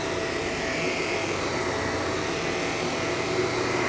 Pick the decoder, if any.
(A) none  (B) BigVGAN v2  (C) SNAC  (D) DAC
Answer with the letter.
A